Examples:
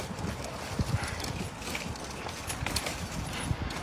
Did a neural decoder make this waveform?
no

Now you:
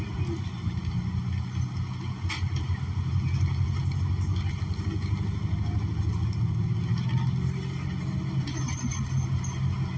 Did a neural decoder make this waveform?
no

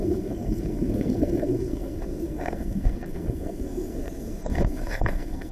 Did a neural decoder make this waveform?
yes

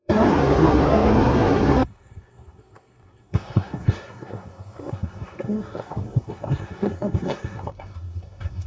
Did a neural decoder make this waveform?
yes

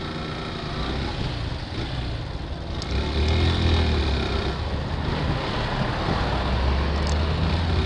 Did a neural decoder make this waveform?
no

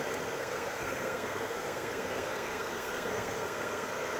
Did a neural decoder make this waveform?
yes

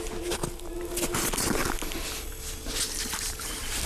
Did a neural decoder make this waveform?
no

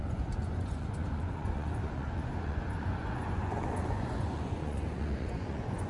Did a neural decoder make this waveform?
yes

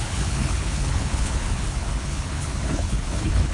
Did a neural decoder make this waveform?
yes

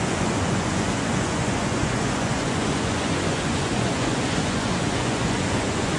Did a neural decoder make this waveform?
yes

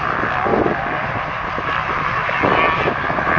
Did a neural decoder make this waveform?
no